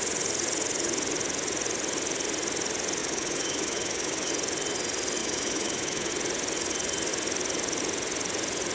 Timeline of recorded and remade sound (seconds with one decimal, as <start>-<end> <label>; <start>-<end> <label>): 0.0-3.0 recorded; 3.0-4.3 remade; 4.3-5.2 recorded; 5.2-6.1 remade; 6.1-8.7 recorded